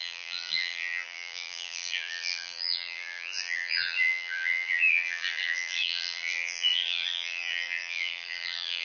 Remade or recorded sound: remade